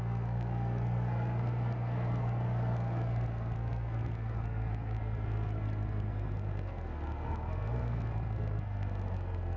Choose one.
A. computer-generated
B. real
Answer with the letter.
A